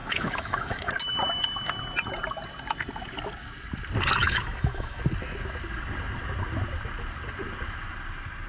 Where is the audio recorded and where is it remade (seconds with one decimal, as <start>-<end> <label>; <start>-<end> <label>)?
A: 0.0-0.9 remade; 0.9-4.2 recorded; 4.2-5.0 remade; 5.0-8.5 recorded